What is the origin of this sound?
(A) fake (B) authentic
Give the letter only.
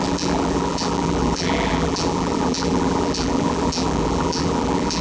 A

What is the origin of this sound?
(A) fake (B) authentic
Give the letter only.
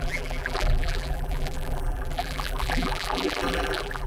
A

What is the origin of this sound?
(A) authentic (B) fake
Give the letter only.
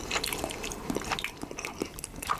B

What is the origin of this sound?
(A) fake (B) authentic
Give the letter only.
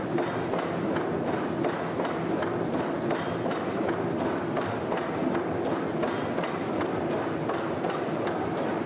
B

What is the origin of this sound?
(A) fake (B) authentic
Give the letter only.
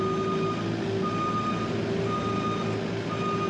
B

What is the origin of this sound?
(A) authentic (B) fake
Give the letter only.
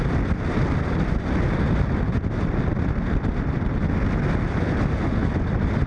A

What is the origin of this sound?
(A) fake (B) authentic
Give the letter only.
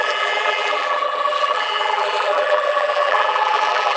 A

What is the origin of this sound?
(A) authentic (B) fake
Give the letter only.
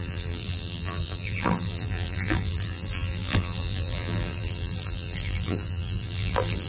B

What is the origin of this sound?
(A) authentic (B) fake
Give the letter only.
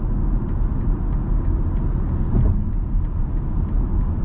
A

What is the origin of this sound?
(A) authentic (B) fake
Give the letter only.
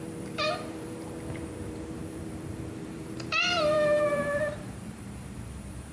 B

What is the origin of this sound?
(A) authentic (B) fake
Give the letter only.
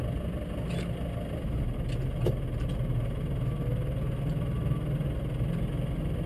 A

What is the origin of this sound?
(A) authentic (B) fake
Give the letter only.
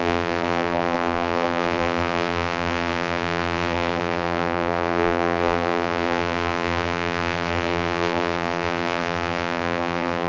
B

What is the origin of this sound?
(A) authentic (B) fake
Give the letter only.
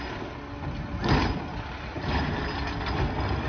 A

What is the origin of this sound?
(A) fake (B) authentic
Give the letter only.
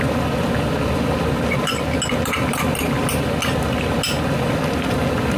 B